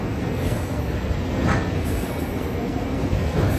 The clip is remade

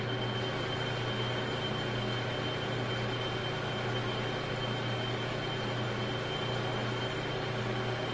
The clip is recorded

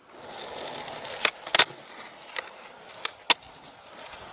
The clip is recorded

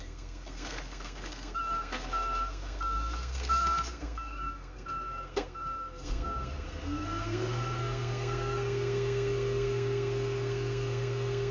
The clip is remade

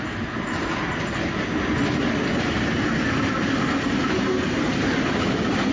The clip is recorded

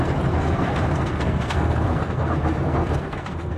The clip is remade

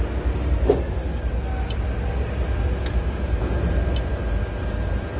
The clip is recorded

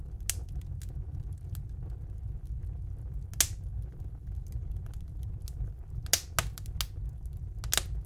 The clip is recorded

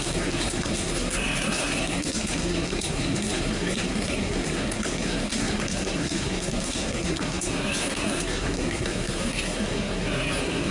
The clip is remade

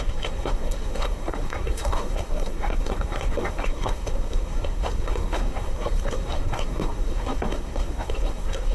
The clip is remade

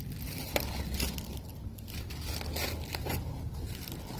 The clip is recorded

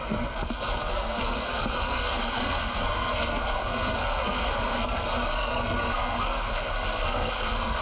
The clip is remade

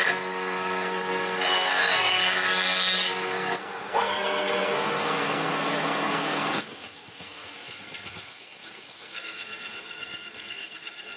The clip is remade